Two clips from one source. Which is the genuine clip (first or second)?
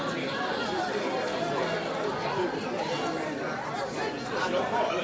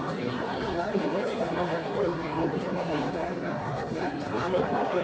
first